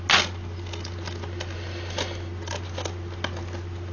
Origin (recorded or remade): recorded